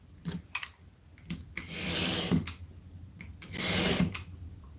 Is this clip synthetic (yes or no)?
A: no